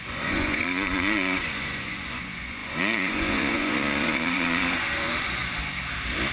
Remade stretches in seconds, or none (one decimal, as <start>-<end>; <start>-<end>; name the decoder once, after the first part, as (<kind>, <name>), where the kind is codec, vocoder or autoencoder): 0.0-5.4 (vocoder, Vocos)

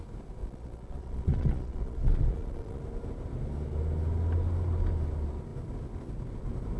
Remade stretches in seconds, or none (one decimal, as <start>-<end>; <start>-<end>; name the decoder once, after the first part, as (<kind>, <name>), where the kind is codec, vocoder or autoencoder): 0.4-2.8 (vocoder, Vocos)

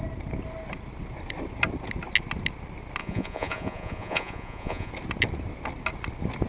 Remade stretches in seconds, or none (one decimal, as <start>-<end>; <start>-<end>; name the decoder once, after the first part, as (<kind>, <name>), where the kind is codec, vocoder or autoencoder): 3.0-4.9 (vocoder, Vocos)

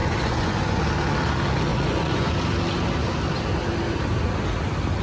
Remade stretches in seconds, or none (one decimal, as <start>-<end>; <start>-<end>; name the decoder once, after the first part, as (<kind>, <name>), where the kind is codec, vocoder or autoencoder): 0.0-0.8 (vocoder, Vocos); 1.7-2.3